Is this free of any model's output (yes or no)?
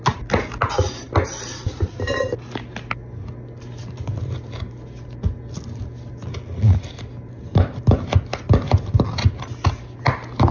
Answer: yes